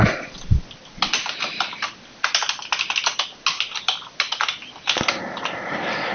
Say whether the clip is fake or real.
real